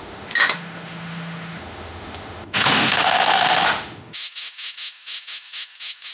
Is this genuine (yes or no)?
no